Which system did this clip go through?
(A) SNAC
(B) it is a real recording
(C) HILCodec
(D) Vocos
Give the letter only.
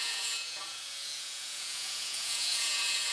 D